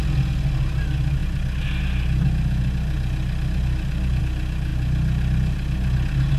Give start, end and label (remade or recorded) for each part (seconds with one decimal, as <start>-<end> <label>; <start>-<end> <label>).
0.0-6.4 recorded